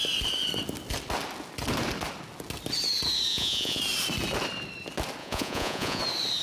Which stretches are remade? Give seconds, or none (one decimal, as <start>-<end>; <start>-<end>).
3.3-3.8; 5.2-6.0